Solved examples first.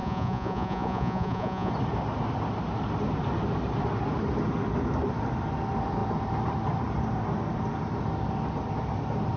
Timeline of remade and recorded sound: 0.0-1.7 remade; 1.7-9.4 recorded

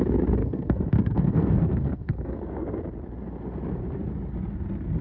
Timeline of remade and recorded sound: 0.0-0.4 recorded; 0.4-2.8 remade; 2.8-5.0 recorded

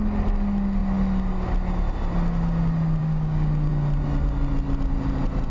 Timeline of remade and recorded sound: 0.0-3.0 recorded; 3.0-3.7 remade; 3.7-5.5 recorded

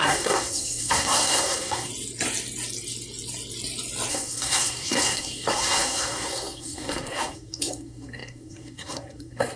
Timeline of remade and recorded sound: 0.0-1.9 remade; 1.9-4.1 recorded; 4.1-9.6 remade

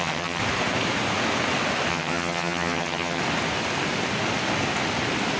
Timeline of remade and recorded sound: 0.0-0.4 remade; 0.4-1.9 recorded; 1.9-3.2 remade; 3.2-5.4 recorded